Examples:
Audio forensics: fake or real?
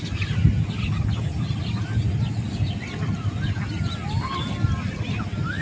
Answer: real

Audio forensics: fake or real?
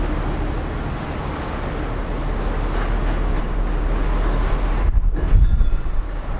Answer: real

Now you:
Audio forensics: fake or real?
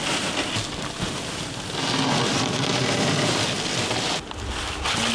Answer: real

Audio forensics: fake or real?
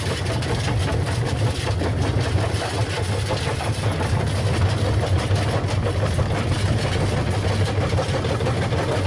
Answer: real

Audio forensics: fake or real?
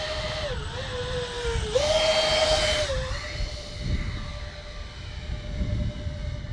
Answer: real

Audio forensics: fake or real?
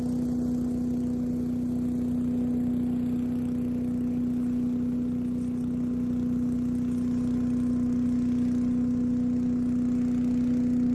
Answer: real